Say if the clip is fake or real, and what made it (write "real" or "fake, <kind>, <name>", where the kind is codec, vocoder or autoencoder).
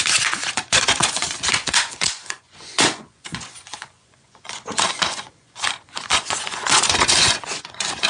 fake, vocoder, Vocos